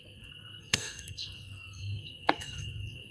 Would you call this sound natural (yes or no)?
no